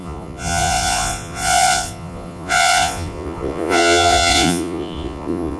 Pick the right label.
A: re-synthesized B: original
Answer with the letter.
A